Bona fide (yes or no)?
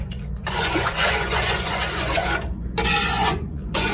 no